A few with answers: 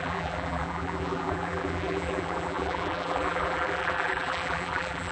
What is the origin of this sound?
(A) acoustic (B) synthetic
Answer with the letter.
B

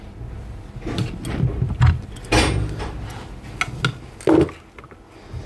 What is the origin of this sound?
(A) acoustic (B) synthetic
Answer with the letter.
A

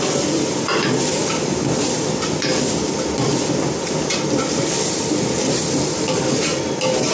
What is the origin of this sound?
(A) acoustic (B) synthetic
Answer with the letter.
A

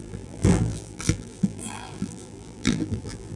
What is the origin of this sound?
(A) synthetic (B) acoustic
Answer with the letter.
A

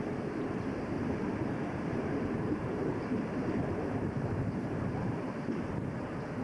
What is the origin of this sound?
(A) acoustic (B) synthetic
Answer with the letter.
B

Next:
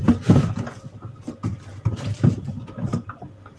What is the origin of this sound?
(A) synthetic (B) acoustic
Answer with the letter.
B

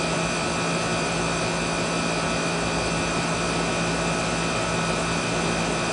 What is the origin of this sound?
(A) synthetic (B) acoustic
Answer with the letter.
B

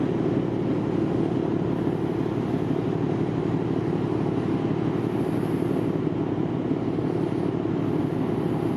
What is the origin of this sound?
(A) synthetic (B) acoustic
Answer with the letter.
B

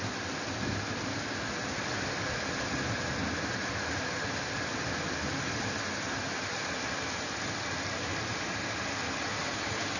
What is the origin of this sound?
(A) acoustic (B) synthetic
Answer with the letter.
B